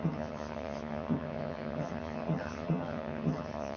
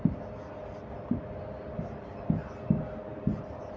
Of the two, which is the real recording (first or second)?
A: second